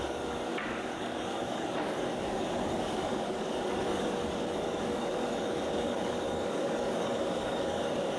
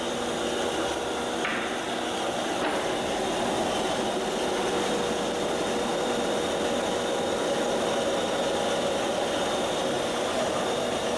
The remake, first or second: first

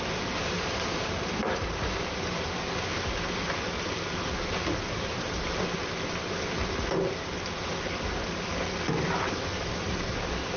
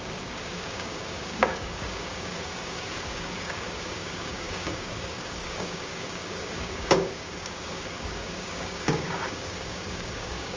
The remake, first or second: second